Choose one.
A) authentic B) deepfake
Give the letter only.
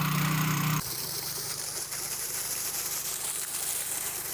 B